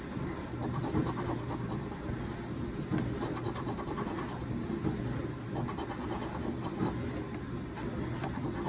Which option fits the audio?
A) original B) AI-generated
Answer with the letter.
A